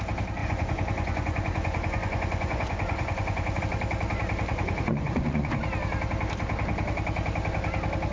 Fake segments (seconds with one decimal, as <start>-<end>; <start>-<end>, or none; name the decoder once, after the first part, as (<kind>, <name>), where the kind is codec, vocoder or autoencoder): 0.4-3.6 (vocoder, Vocos); 4.5-5.6